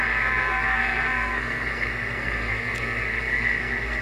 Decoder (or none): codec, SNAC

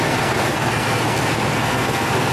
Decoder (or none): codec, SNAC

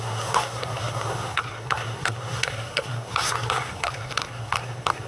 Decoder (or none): codec, SNAC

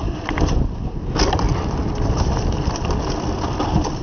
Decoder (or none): none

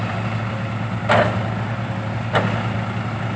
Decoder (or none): none